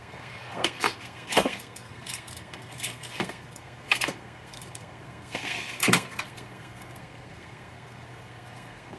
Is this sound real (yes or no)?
no